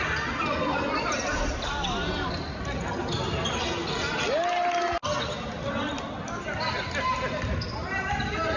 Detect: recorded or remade recorded